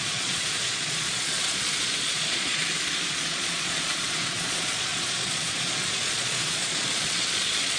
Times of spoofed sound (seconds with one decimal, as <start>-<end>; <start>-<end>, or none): 0.0-2.6; 3.1-7.8